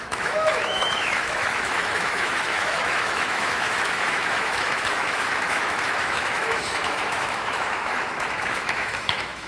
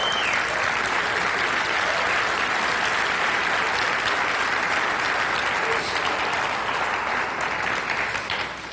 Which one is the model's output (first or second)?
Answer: first